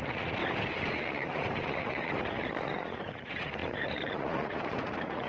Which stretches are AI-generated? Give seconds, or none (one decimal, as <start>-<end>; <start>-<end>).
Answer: 0.0-0.4; 0.9-5.3